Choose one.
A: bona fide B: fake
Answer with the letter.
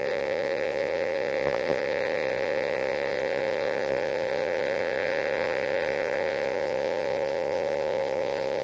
B